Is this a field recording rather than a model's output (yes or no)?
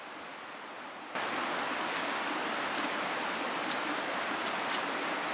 yes